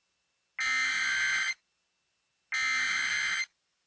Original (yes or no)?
yes